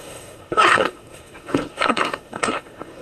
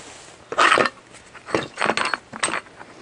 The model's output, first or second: first